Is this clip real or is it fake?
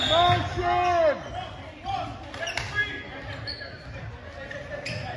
real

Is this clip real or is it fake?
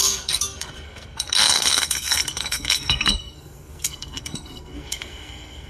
fake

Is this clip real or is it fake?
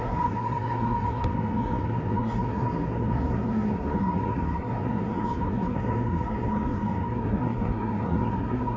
fake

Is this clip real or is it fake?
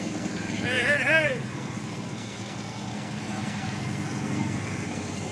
fake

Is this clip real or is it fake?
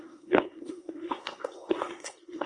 fake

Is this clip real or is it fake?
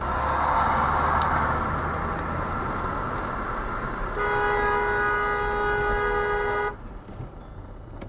real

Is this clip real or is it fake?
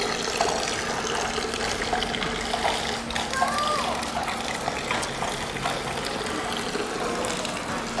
real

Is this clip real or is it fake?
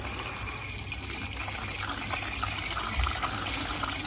real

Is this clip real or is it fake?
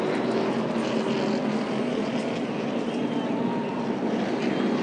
real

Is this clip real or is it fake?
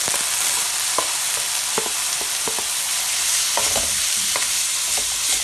real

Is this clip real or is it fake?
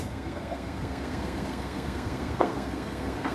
fake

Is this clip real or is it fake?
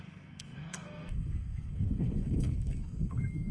fake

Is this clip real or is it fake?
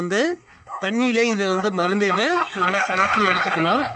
fake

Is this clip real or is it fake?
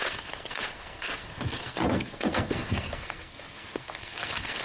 fake